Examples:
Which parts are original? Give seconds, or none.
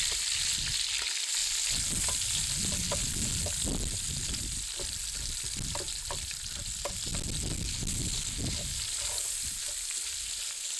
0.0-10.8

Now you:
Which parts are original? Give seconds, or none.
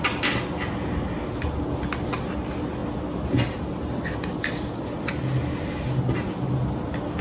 0.0-7.2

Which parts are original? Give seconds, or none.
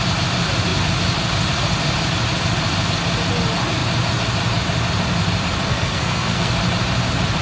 0.0-5.7; 6.5-7.4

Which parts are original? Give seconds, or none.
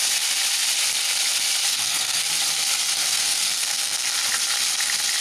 0.0-1.7; 2.2-3.1; 4.0-5.2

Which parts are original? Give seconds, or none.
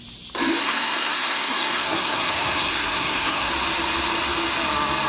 0.0-0.6; 3.5-5.1